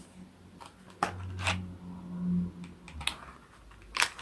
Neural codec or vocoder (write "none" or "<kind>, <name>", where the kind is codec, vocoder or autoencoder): none